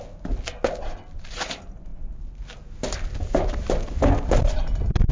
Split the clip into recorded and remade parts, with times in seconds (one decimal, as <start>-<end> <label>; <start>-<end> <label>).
0.0-5.1 recorded

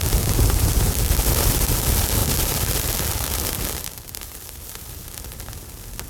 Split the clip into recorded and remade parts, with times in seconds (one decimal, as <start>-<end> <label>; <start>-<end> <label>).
0.0-6.1 recorded

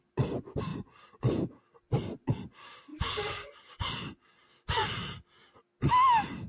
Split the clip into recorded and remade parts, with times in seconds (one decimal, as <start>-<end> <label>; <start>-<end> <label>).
0.0-6.5 recorded

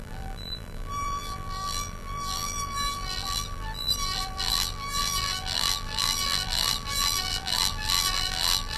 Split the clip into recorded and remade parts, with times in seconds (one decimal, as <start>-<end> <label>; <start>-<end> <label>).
0.0-8.8 remade

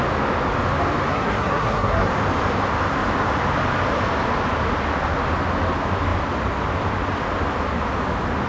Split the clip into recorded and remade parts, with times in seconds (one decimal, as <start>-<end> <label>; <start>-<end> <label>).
0.0-1.1 recorded; 1.1-2.1 remade; 2.1-8.5 recorded

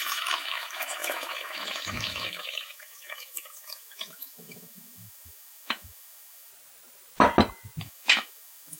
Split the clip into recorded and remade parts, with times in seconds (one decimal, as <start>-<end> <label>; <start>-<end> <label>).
0.0-6.5 remade; 6.5-7.8 recorded; 7.8-8.8 remade

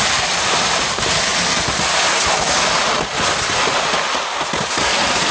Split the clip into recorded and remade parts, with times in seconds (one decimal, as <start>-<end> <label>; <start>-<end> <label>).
0.0-5.3 recorded

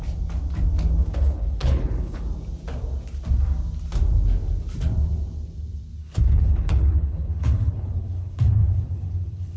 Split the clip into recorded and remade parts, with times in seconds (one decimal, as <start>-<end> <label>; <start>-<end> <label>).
0.0-1.1 recorded; 1.1-2.2 remade; 2.2-6.0 recorded; 6.0-9.6 remade